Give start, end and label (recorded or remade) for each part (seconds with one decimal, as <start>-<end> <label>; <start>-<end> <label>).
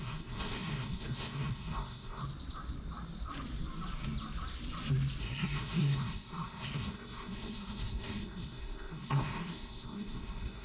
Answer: 0.0-2.2 remade; 2.2-5.2 recorded; 5.2-10.6 remade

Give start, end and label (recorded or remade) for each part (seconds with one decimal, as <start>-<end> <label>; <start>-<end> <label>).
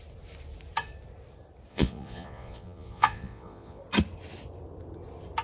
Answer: 0.0-1.7 recorded; 1.7-3.8 remade; 3.8-5.4 recorded